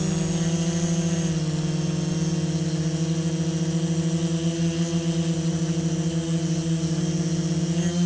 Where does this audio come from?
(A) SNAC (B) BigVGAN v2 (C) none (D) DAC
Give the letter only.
C